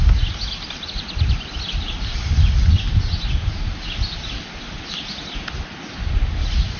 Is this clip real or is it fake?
real